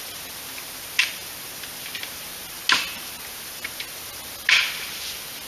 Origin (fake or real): real